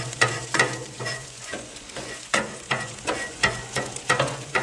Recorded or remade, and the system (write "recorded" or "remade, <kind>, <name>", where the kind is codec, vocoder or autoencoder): remade, vocoder, Vocos